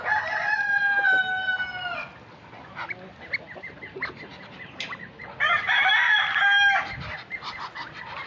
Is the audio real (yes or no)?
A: yes